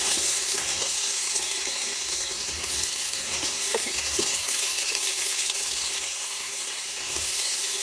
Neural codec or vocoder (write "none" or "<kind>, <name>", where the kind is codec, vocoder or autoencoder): codec, SNAC